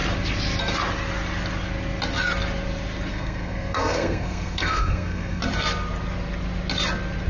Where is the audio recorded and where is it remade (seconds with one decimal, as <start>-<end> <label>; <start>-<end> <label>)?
0.0-3.1 recorded; 3.1-5.4 remade; 5.4-7.3 recorded